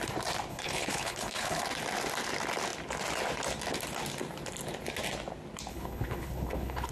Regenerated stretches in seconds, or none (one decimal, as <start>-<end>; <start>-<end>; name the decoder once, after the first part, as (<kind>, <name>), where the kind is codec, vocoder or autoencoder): 0.5-1.6 (codec, HILCodec); 5.7-6.9